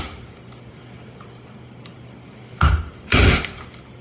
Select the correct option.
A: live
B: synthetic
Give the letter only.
A